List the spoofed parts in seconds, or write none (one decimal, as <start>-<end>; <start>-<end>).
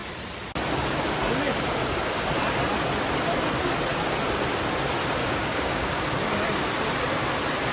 5.2-6.0